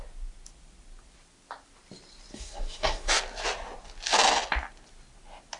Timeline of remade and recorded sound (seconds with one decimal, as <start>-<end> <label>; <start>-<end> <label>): 0.0-2.3 recorded; 2.3-3.1 remade; 3.1-5.6 recorded